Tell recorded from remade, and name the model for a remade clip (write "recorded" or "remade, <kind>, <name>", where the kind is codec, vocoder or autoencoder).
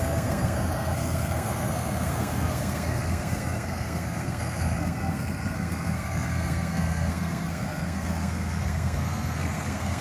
remade, codec, SNAC